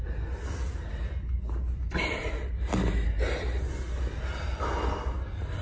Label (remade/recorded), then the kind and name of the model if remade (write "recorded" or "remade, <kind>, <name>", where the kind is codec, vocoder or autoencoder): recorded